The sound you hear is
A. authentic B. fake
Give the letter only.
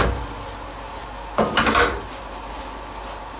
A